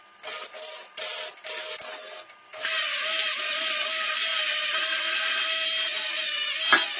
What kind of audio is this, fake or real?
real